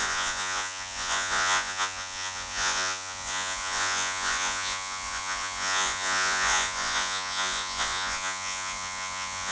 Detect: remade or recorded remade